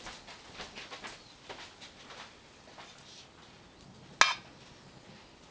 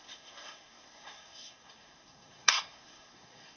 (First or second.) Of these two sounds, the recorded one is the first